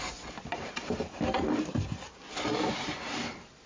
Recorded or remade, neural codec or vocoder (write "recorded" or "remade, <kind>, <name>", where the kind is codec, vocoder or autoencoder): recorded